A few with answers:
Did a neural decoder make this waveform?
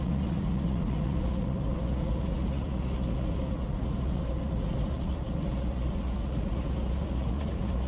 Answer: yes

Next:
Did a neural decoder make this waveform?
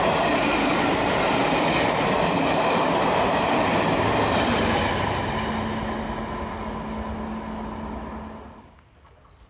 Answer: no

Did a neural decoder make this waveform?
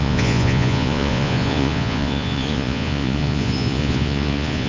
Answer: yes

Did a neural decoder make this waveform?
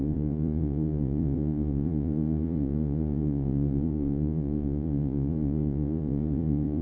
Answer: yes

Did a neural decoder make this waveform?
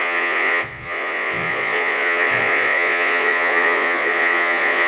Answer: yes